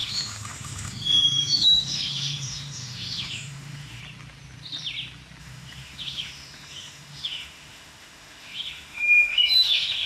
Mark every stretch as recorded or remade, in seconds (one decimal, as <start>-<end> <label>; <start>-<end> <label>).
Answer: 0.0-4.0 remade; 4.0-5.4 recorded; 5.4-10.1 remade